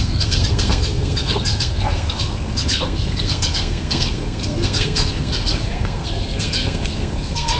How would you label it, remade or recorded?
remade